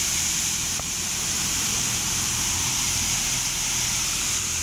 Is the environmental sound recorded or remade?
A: remade